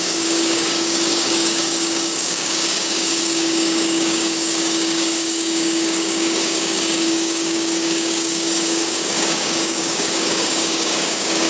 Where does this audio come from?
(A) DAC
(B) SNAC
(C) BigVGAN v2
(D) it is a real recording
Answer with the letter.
A